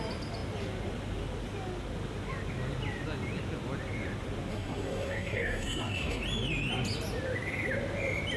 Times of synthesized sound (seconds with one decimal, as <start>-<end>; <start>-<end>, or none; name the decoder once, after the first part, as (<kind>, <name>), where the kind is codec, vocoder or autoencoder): 4.5-6.2 (codec, SNAC)